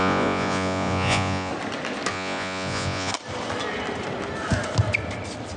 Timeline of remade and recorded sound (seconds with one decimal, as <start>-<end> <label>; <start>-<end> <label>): 0.0-1.5 remade; 1.5-2.1 recorded; 2.1-3.1 remade; 3.1-5.6 recorded